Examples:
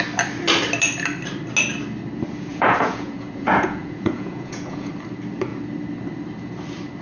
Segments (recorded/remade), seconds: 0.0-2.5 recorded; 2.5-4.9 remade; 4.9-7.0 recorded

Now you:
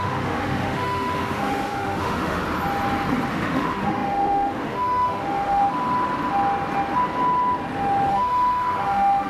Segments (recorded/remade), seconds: 0.0-2.4 remade; 2.4-3.3 recorded; 3.3-5.6 remade; 5.6-8.1 recorded; 8.1-9.3 remade

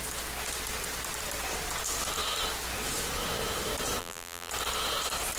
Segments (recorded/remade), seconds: 0.0-4.0 recorded; 4.0-4.5 remade; 4.5-5.4 recorded

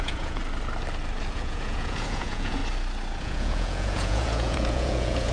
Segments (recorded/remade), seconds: 0.0-0.4 remade; 0.4-1.3 recorded; 1.3-2.6 remade; 2.6-3.2 recorded; 3.2-5.3 remade

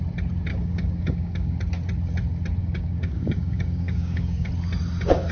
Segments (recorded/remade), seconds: 0.0-0.5 recorded; 0.5-1.6 remade; 1.6-2.6 recorded; 2.6-4.5 remade; 4.5-5.3 recorded

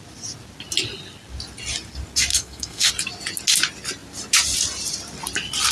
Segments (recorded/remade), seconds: 0.0-2.3 recorded; 2.3-2.9 remade; 2.9-5.7 recorded